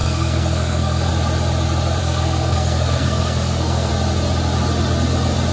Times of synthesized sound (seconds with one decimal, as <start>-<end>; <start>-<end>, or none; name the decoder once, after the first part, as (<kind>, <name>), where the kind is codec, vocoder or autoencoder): 0.0-1.1 (codec, SNAC); 2.0-3.9